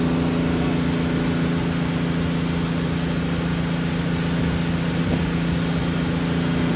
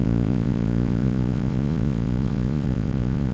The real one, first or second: first